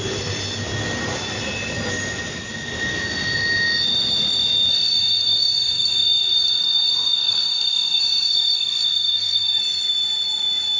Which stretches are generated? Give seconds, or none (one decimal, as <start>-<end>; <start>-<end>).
4.7-9.6